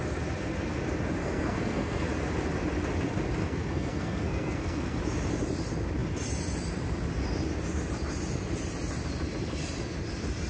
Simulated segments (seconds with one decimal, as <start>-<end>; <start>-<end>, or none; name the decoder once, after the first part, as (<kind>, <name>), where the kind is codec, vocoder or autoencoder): 1.2-2.1 (codec, SNAC); 3.4-5.0